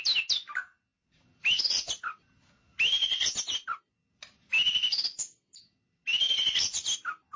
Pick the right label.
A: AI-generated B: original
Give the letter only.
B